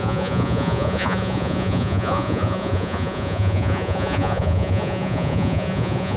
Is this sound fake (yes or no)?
yes